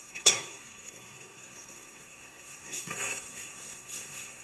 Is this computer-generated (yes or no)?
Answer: yes